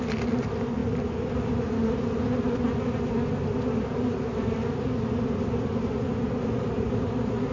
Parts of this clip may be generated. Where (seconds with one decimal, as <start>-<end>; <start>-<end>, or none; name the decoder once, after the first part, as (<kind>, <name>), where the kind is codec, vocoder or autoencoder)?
none